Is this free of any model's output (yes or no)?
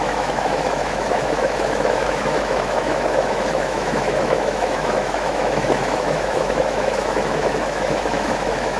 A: no